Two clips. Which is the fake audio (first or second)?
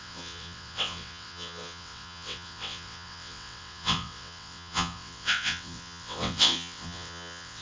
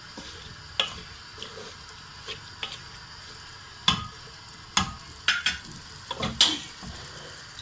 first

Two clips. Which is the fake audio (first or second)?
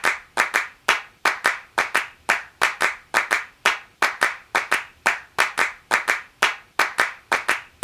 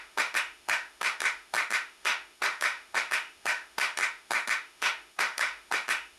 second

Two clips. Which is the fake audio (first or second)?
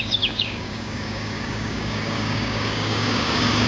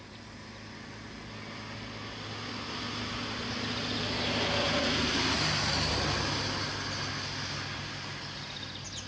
first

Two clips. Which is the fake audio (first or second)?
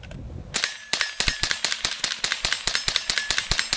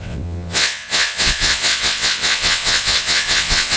second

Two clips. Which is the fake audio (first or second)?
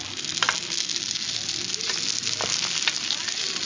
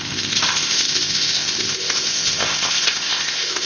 second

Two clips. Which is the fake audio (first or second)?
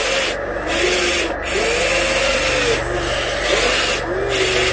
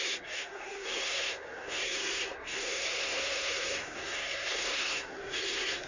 second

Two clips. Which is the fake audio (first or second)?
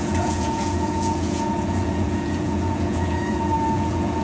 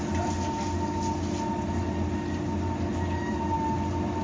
first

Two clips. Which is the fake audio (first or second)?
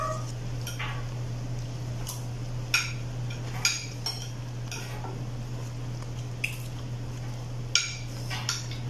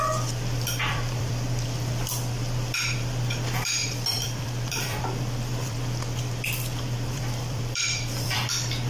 second